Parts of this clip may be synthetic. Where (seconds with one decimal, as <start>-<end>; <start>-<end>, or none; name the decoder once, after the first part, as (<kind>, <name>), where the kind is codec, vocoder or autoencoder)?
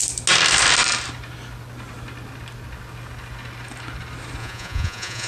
4.4-5.3 (vocoder, Vocos)